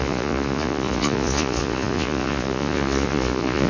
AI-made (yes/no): yes